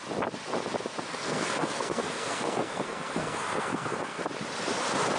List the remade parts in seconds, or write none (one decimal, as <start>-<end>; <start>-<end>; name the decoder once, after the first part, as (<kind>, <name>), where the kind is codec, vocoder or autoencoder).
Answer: 1.1-4.2 (codec, SNAC)